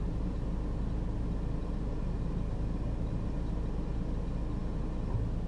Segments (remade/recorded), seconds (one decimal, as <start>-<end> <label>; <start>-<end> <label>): 0.0-5.5 recorded